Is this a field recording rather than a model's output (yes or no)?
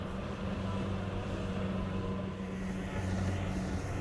yes